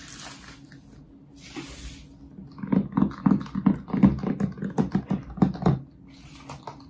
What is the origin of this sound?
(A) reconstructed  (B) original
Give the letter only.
B